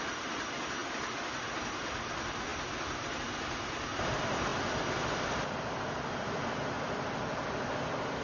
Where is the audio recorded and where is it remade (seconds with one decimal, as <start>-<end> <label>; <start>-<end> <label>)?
0.0-8.2 recorded